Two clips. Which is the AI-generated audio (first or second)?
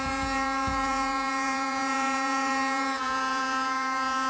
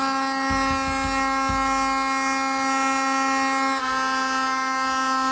first